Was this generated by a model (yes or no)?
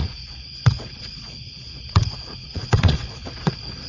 yes